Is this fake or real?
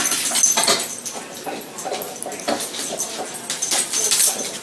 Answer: real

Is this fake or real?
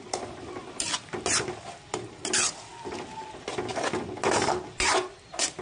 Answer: real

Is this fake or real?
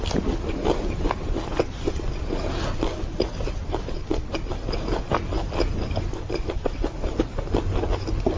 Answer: real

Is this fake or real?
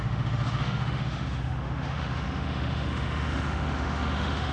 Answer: fake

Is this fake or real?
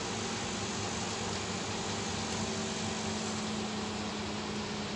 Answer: real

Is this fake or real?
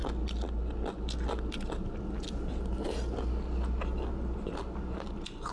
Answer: real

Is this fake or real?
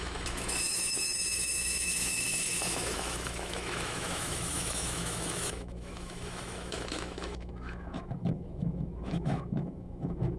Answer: fake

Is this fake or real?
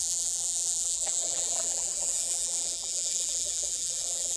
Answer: fake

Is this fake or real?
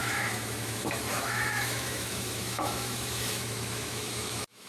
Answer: fake